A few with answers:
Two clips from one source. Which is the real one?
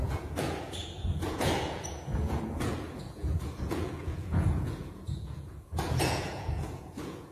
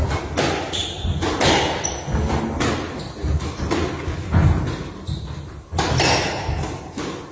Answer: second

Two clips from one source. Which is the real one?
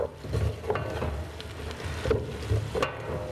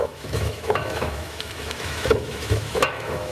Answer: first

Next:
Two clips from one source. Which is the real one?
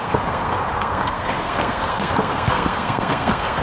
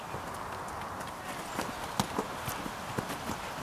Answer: second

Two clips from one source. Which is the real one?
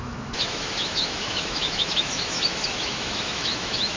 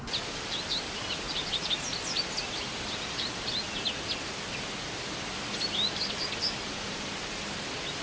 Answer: second